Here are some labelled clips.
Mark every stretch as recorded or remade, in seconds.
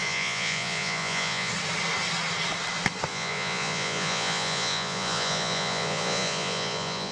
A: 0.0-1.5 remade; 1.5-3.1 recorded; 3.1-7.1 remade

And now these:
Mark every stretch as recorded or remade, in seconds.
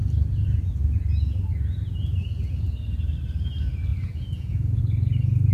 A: 0.0-3.9 recorded; 3.9-4.8 remade; 4.8-5.5 recorded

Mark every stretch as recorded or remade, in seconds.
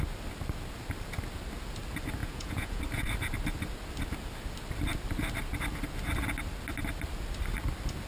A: 0.0-2.2 recorded; 2.2-2.8 remade; 2.8-8.1 recorded